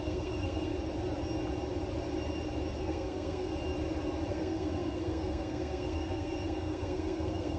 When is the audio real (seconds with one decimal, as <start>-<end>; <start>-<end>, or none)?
0.7-2.8; 3.5-4.3